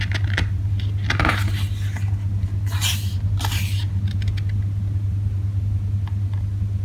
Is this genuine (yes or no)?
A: yes